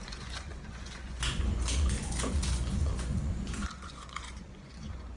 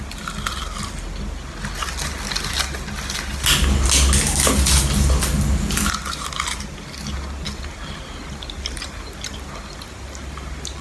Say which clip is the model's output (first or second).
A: first